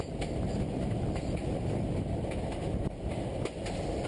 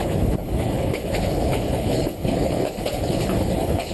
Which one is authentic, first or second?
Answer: first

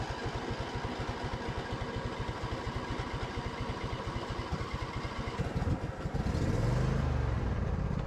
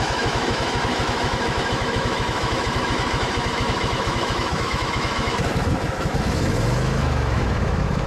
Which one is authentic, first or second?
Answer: first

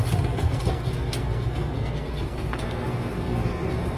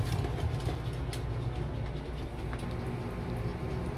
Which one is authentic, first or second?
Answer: second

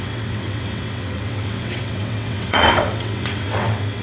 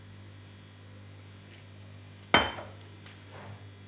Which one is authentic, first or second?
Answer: second